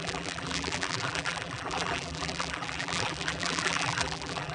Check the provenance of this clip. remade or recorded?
remade